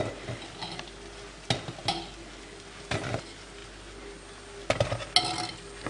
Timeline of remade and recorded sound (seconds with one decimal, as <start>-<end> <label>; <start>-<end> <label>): 0.0-5.9 recorded